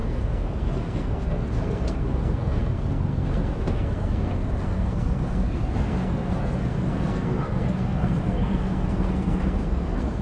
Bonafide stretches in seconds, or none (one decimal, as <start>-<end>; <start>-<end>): none